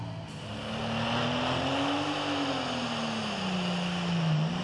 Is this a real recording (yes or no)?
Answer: yes